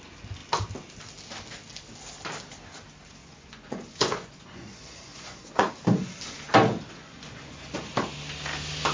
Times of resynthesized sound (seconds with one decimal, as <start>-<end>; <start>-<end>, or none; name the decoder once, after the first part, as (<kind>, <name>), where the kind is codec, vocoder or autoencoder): 3.2-5.7 (vocoder, Vocos); 7.0-7.9